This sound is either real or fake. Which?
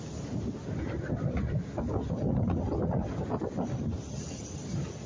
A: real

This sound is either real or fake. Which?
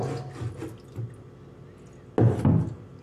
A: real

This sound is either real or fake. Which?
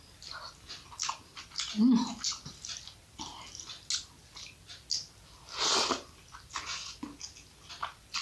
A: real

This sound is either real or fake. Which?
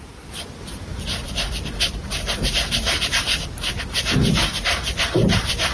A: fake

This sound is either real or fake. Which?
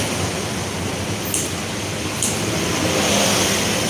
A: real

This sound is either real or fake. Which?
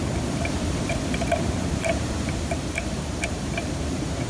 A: fake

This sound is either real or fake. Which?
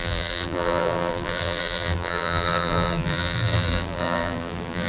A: fake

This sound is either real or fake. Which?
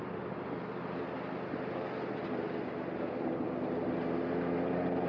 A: real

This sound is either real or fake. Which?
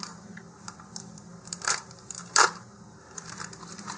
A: fake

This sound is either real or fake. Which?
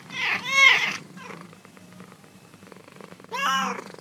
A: fake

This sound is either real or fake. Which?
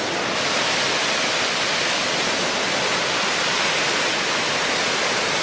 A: real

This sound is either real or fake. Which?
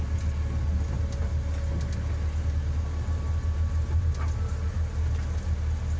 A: real